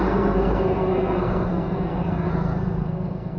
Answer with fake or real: fake